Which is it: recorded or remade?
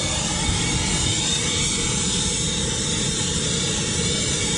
recorded